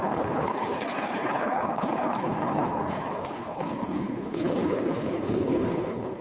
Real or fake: fake